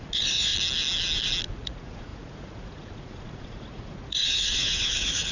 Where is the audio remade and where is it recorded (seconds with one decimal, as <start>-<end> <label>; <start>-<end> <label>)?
0.0-0.5 remade; 0.5-1.5 recorded; 1.5-5.3 remade